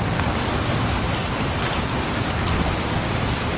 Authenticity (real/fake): real